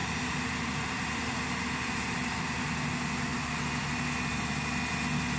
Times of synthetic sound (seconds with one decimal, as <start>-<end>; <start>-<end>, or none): 0.0-2.6